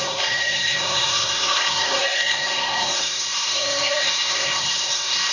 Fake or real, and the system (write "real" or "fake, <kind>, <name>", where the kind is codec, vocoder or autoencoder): fake, codec, SNAC